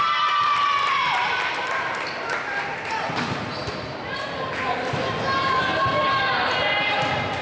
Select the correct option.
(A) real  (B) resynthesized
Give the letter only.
A